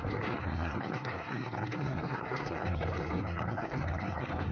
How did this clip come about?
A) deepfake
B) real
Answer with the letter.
A